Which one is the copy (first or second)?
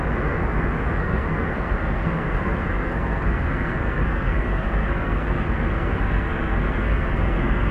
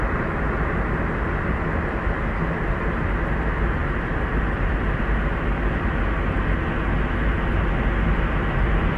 first